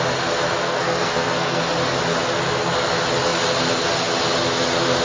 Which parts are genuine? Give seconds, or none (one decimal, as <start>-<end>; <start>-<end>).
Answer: 0.0-0.6; 1.6-5.0